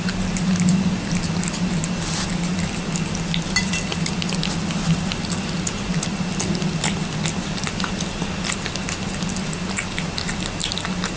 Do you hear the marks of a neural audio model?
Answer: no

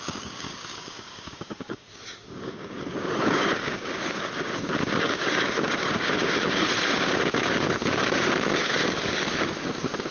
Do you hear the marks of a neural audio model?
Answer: yes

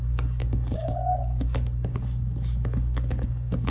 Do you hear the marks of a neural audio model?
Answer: yes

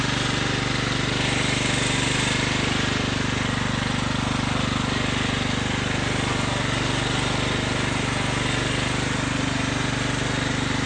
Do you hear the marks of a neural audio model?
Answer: no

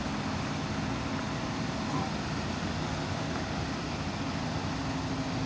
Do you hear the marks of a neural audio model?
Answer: no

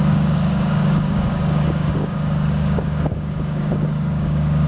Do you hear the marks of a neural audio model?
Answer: yes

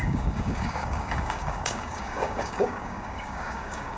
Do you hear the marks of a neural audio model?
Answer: yes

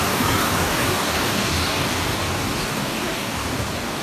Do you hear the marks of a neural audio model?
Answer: yes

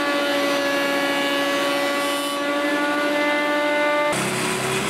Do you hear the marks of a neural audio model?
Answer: no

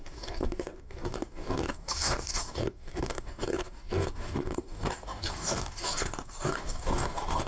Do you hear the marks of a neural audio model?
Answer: yes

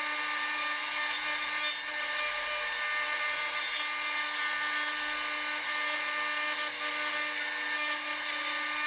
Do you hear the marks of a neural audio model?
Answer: no